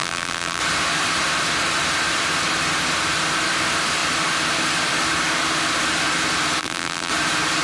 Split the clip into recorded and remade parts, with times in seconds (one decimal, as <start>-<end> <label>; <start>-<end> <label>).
0.0-0.6 remade; 0.6-6.6 recorded; 6.6-7.1 remade; 7.1-7.6 recorded